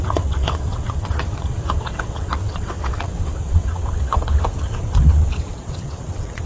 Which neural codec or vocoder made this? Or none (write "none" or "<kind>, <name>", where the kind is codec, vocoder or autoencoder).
vocoder, WaveNeXt